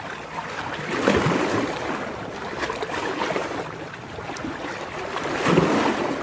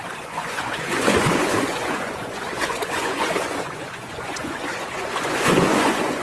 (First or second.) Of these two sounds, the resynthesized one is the second